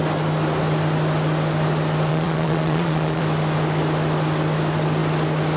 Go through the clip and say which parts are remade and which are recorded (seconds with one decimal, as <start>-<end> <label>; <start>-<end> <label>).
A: 0.0-2.1 recorded; 2.1-3.2 remade; 3.2-5.6 recorded